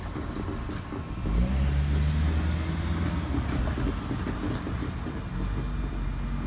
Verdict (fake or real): real